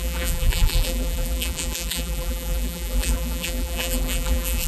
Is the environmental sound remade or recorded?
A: remade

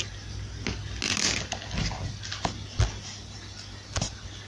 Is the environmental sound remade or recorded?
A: recorded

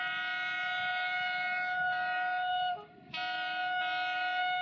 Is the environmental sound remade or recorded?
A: recorded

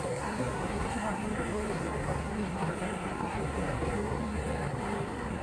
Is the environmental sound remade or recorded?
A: remade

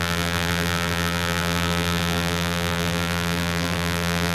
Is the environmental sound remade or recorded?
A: remade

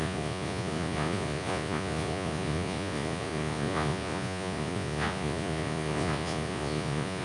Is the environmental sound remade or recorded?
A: remade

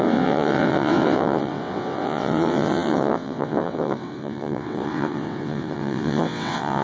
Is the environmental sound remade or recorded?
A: remade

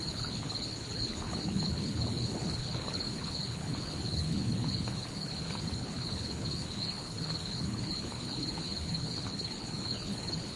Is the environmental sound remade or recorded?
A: remade